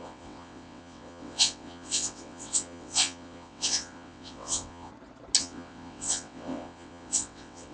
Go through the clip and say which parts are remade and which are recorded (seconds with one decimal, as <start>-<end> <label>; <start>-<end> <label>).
0.0-4.9 remade; 4.9-5.4 recorded; 5.4-7.7 remade